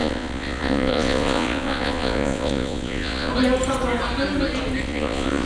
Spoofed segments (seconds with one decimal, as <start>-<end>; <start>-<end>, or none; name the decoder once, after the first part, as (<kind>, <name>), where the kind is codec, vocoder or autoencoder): 0.0-3.3 (vocoder, Vocos); 4.8-5.5